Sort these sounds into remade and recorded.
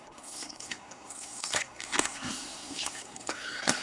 remade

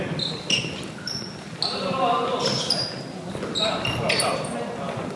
recorded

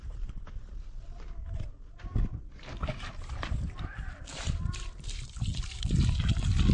recorded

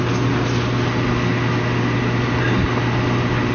recorded